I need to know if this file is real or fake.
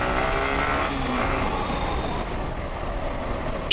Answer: real